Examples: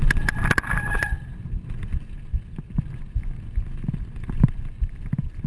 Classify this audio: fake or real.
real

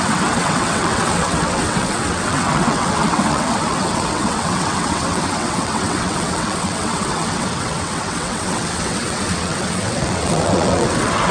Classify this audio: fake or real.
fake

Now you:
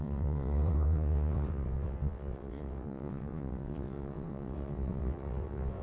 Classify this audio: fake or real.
fake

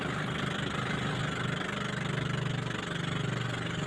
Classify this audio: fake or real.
real